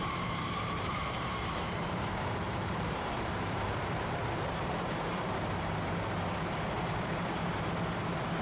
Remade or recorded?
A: remade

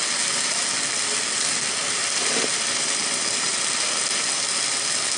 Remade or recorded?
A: recorded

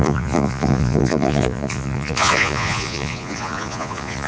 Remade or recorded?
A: remade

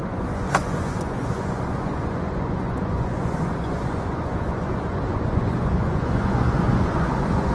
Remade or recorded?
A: remade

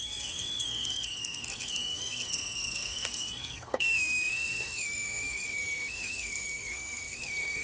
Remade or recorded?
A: remade